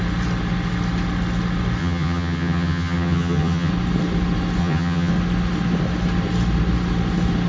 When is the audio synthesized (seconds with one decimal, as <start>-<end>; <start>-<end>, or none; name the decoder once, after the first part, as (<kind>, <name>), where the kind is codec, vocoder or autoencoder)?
1.8-3.7 (vocoder, HiFi-GAN); 4.6-5.1